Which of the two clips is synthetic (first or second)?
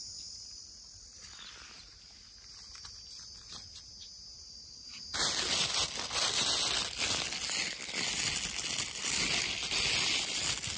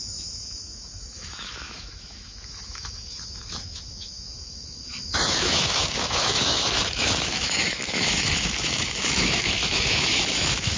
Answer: second